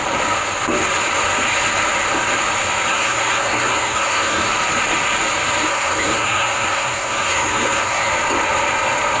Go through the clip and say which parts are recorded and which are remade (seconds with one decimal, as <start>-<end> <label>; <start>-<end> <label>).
0.0-2.9 recorded; 2.9-4.5 remade; 4.5-5.7 recorded; 5.7-8.1 remade; 8.1-9.2 recorded